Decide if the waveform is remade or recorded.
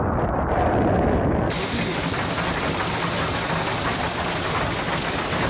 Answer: recorded